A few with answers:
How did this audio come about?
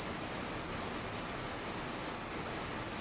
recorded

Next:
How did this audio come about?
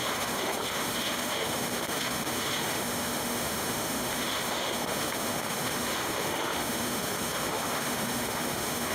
remade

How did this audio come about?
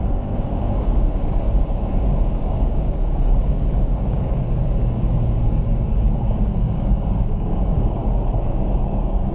remade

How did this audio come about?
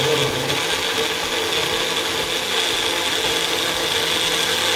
recorded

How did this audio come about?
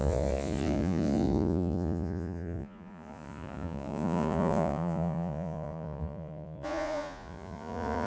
remade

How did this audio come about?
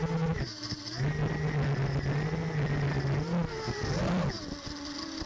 recorded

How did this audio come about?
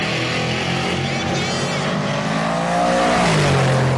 recorded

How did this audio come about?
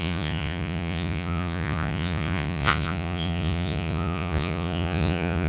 remade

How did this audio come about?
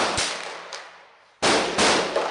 recorded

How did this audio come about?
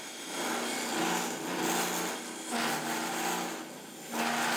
recorded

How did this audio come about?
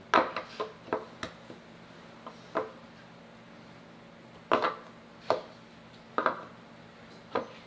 recorded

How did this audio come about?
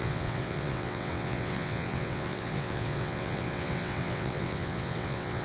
remade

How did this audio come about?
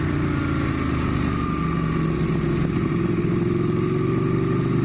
recorded